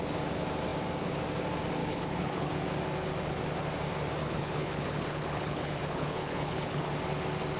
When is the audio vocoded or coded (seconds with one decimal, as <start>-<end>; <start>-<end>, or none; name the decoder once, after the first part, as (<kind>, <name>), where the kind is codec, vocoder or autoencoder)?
1.8-2.5 (codec, HILCodec); 4.2-6.9

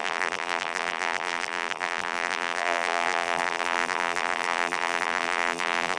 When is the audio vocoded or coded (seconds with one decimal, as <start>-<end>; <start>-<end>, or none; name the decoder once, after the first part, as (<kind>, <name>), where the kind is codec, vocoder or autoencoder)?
0.0-6.0 (vocoder, BigVGAN v2)

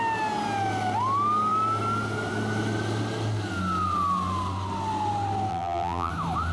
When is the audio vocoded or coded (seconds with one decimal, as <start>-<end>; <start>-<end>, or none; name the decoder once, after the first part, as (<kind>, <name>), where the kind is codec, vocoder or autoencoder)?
5.5-6.1 (vocoder, BigVGAN v2)

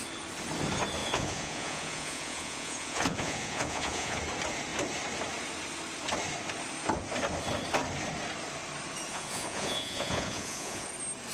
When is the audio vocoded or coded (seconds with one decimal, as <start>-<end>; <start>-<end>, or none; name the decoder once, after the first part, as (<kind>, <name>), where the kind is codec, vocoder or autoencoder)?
1.0-4.2 (vocoder, Vocos); 9.1-10.9

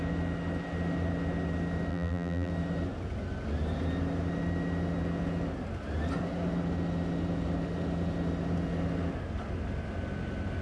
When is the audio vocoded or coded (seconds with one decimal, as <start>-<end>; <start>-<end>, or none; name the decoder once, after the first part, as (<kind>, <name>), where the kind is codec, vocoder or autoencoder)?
1.9-2.5 (vocoder, BigVGAN v2)

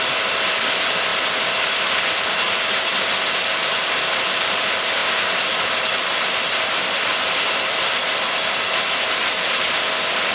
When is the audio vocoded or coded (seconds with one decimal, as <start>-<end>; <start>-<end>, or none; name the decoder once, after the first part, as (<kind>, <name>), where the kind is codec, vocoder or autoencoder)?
none

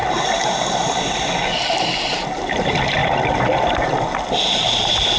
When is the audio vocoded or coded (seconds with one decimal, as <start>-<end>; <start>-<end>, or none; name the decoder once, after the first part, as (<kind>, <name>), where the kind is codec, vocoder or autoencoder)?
none